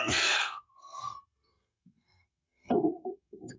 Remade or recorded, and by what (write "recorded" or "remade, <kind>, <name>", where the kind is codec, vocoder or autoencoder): remade, codec, SNAC